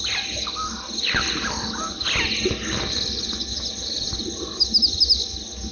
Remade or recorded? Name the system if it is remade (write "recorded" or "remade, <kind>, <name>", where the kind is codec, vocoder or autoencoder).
recorded